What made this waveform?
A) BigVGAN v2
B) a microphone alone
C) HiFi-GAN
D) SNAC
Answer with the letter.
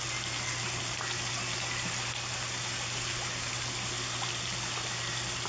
B